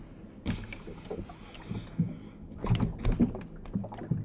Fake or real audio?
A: real